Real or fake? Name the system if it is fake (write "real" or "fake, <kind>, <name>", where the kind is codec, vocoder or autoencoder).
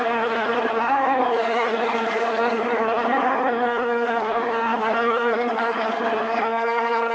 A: fake, codec, SNAC